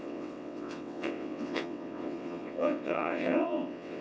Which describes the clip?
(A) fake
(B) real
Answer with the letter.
A